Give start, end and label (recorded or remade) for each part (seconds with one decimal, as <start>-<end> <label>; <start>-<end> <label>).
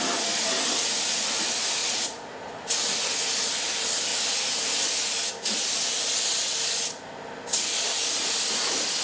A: 0.0-1.8 recorded; 1.8-3.3 remade; 3.3-9.0 recorded